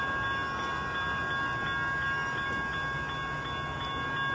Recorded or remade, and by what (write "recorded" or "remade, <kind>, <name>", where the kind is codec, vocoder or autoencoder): recorded